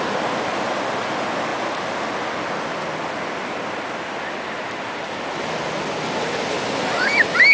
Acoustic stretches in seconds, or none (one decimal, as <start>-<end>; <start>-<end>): 0.0-7.5

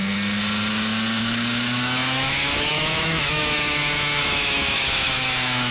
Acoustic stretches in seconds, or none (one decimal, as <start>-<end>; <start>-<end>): 0.0-1.2